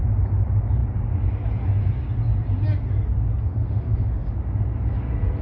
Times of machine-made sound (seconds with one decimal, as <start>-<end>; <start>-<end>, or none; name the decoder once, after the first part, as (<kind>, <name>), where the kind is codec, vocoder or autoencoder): 3.5-4.3 (autoencoder, DAC-VAE)